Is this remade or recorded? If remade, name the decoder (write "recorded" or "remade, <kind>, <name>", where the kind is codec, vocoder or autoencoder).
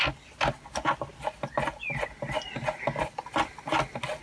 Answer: recorded